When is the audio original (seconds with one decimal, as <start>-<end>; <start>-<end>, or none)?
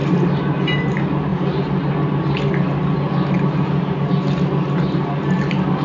0.0-5.8